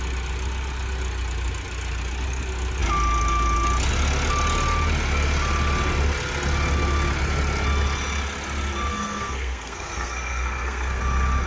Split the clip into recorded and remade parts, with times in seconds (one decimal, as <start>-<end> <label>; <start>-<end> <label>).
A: 0.0-8.9 recorded; 8.9-11.0 remade; 11.0-11.5 recorded